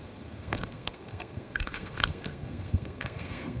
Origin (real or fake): fake